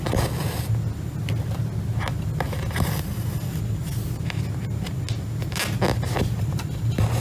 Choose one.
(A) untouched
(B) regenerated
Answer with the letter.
A